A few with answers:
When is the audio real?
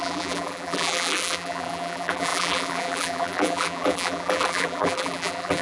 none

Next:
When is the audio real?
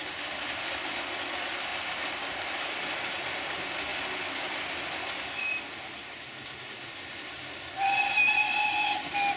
0.0-9.4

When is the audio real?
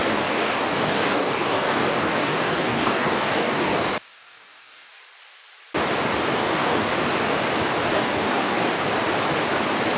4.9-6.4; 7.1-7.8; 8.8-10.0